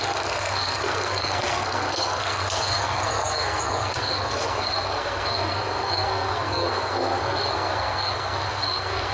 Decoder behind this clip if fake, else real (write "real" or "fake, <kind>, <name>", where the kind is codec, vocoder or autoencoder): fake, codec, SNAC